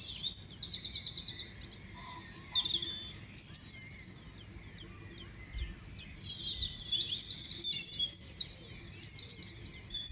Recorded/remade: recorded